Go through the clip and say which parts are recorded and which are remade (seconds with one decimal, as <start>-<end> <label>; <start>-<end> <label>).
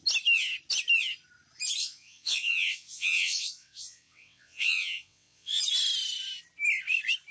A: 0.0-1.8 recorded; 1.8-5.6 remade; 5.6-7.3 recorded